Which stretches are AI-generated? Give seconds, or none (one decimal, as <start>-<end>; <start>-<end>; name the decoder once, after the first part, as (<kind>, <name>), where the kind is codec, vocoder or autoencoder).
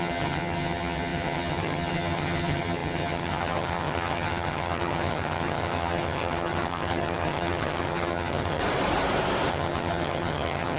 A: 0.0-8.6 (vocoder, HiFi-GAN); 9.5-10.8